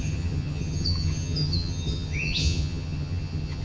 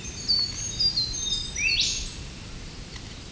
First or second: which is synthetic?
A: first